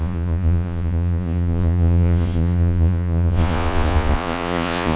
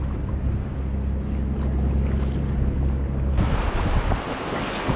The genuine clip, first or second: second